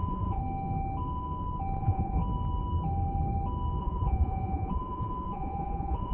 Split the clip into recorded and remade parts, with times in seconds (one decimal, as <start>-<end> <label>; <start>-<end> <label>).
0.0-0.4 remade; 0.4-1.8 recorded; 1.8-2.2 remade; 2.2-3.8 recorded; 3.8-6.1 remade